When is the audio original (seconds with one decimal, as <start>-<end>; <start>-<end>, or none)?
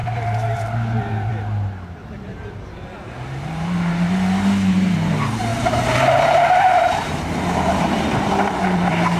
0.0-2.3; 5.1-5.5